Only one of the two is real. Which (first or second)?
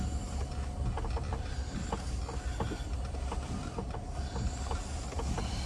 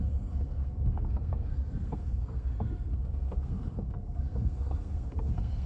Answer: first